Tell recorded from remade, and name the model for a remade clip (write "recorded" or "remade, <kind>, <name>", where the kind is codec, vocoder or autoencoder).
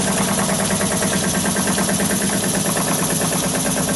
recorded